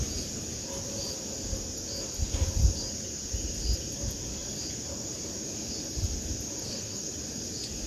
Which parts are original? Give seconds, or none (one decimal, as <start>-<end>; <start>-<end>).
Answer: 0.0-6.6; 7.1-7.9